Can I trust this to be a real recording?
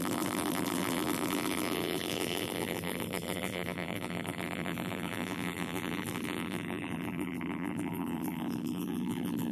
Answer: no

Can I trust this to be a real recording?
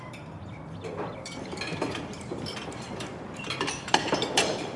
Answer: no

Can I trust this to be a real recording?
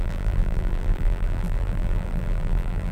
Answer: no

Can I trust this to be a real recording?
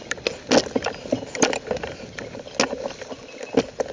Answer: yes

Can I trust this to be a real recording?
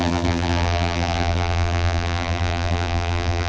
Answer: no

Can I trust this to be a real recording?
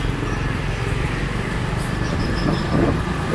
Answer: yes